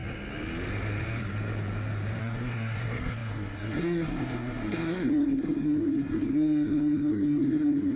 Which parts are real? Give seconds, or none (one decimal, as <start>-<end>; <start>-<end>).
0.0-2.2